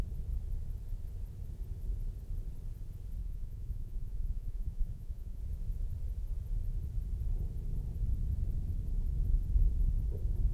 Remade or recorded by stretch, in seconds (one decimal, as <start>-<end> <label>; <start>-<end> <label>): 0.0-3.2 recorded; 3.2-5.4 remade; 5.4-10.5 recorded